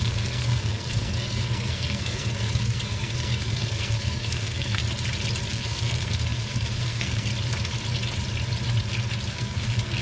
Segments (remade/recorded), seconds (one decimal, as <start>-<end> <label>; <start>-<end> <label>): 0.0-4.8 remade; 4.8-5.5 recorded; 5.5-7.3 remade; 7.3-9.3 recorded; 9.3-10.0 remade